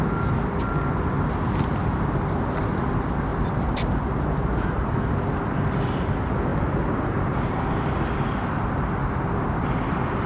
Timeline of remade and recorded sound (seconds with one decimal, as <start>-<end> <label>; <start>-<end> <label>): 0.0-3.3 recorded; 3.3-5.7 remade; 5.7-10.3 recorded